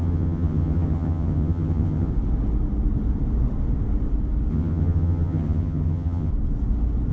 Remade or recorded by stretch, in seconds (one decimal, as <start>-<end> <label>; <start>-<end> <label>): 0.0-2.1 remade; 2.1-4.5 recorded; 4.5-6.3 remade; 6.3-7.1 recorded